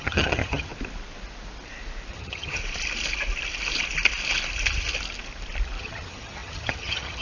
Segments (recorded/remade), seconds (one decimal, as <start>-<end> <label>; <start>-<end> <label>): 0.0-0.7 remade; 0.7-2.1 recorded; 2.1-2.6 remade; 2.6-5.8 recorded; 5.8-7.2 remade